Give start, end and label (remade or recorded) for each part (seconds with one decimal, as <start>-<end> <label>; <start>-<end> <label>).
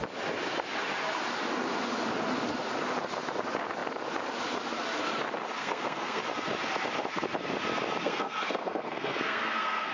0.0-5.6 recorded; 5.6-6.2 remade; 6.2-8.0 recorded; 8.0-9.9 remade